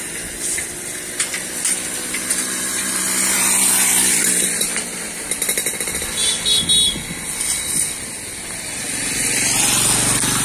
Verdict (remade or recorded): recorded